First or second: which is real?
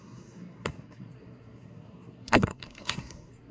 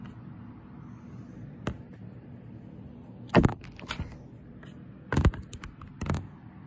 second